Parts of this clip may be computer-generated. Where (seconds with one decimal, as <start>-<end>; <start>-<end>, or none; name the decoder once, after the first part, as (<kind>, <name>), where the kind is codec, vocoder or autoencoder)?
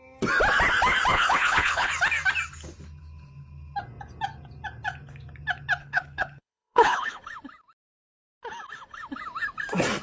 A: 1.1-1.9 (codec, HILCodec); 5.8-7.2